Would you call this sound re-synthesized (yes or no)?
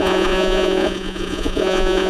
yes